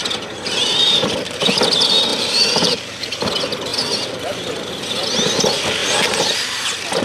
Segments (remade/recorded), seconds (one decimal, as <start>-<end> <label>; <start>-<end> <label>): 0.0-2.1 recorded; 2.1-3.3 remade; 3.3-3.7 recorded; 3.7-4.6 remade; 4.6-7.0 recorded